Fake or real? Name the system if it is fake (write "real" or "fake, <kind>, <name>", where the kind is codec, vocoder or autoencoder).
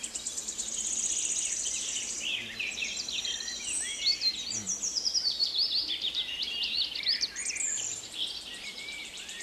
fake, vocoder, BigVGAN v2